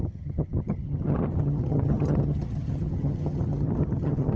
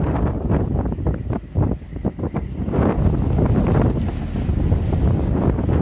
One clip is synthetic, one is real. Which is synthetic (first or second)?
first